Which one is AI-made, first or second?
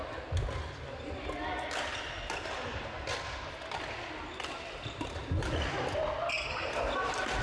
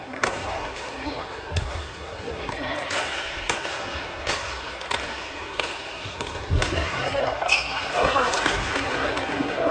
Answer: second